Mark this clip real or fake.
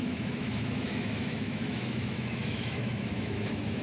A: fake